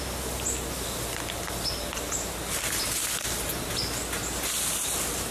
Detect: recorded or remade recorded